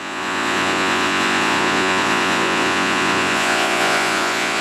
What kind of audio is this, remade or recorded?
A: remade